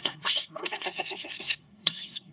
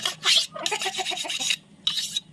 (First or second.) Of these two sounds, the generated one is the first